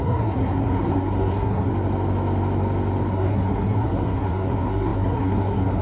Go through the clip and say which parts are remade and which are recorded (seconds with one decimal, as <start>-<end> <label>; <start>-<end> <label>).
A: 0.0-1.7 remade; 1.7-3.1 recorded; 3.1-5.8 remade